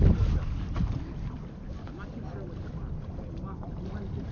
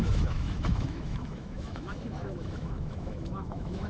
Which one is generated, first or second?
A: second